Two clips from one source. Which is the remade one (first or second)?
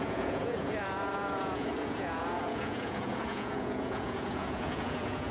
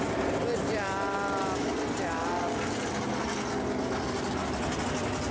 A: first